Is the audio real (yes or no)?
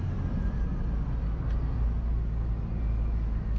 yes